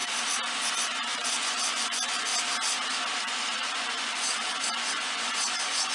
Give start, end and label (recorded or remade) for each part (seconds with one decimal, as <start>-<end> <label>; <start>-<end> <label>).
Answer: 0.0-0.7 recorded; 0.7-2.3 remade; 2.3-3.4 recorded; 3.4-5.9 remade